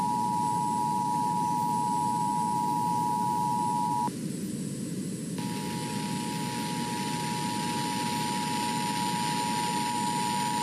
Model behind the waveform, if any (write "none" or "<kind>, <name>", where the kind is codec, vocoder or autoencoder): none